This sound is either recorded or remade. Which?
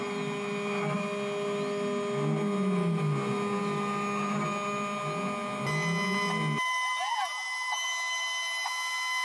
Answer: recorded